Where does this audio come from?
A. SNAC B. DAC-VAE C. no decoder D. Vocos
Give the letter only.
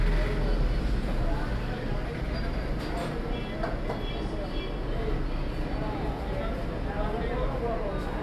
C